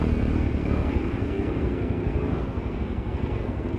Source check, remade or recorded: remade